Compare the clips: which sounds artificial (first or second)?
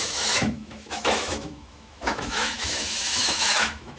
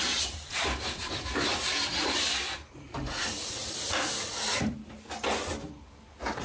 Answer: first